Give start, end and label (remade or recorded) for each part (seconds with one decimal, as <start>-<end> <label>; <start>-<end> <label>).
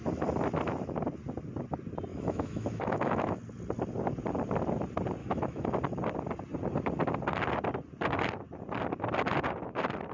0.0-2.1 recorded; 2.1-3.4 remade; 3.4-5.2 recorded; 5.2-5.8 remade; 5.8-10.1 recorded